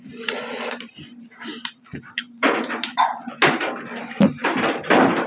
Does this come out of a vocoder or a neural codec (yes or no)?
yes